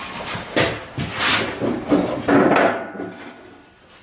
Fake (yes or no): no